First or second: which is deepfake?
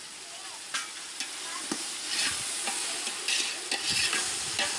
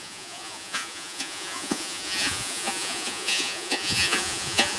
second